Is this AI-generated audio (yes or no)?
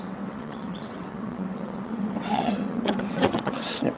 yes